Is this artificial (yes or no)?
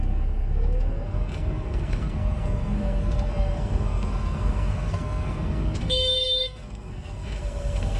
yes